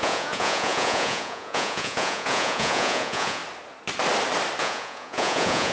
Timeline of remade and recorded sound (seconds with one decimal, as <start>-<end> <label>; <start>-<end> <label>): 0.0-3.4 remade; 3.4-4.6 recorded; 4.6-5.7 remade